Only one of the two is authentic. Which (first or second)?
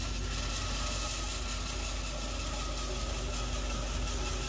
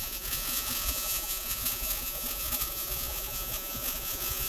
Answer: first